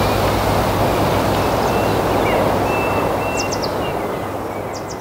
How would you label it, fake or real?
real